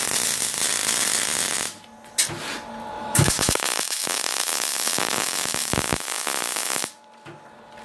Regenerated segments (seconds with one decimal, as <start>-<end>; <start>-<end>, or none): 3.0-6.9